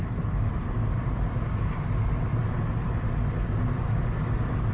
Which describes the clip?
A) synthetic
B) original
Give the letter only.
B